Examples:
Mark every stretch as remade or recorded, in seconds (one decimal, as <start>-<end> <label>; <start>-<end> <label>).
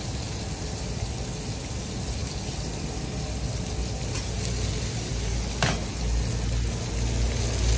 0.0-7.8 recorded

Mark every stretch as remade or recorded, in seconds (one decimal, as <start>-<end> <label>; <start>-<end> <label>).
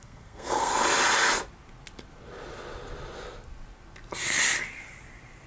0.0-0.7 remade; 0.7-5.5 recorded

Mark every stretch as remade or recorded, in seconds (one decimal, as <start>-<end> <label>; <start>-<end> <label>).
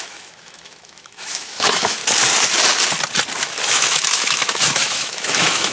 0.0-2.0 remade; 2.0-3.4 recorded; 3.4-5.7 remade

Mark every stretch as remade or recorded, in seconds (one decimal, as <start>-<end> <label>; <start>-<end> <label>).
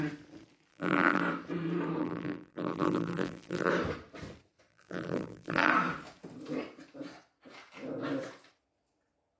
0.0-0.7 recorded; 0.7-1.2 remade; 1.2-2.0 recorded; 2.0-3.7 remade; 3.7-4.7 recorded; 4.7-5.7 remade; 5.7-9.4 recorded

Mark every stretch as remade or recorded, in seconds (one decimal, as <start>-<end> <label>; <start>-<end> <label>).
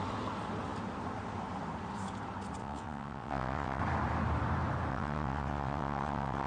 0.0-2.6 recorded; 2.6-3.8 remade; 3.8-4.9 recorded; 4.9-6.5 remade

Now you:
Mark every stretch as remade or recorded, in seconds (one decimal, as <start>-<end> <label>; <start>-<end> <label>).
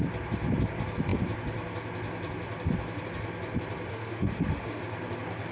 0.0-3.9 recorded; 3.9-4.8 remade; 4.8-5.5 recorded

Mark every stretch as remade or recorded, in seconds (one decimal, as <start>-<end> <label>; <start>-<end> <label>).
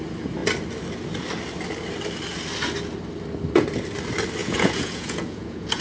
0.0-4.4 recorded; 4.4-5.8 remade